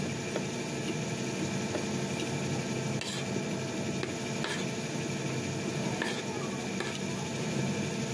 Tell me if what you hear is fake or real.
real